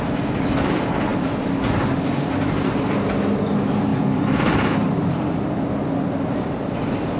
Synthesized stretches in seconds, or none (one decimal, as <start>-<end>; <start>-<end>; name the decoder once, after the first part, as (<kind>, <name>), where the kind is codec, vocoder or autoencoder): none